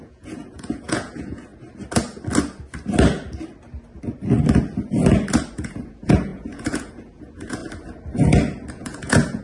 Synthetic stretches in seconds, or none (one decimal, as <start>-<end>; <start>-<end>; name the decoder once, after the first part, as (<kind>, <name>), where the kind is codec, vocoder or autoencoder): 0.0-1.5 (vocoder, Vocos); 5.5-7.6; 8.7-9.4